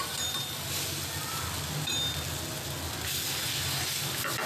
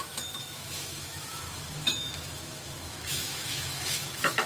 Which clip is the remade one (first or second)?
second